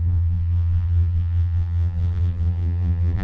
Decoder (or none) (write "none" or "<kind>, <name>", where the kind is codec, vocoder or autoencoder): vocoder, BigVGAN v2